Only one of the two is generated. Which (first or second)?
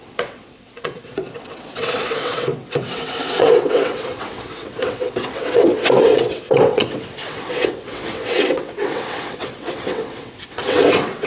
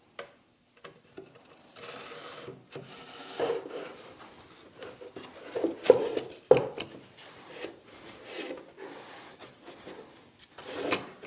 first